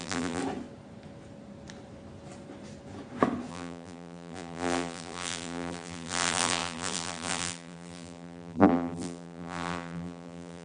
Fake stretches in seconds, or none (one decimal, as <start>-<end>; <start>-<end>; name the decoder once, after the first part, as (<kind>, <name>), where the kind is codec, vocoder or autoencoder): 0.0-0.4 (vocoder, BigVGAN v2); 3.5-10.6